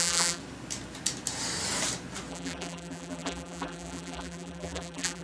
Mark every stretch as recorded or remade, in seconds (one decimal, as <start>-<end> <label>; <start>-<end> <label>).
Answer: 0.0-0.4 remade; 0.4-2.3 recorded; 2.3-5.2 remade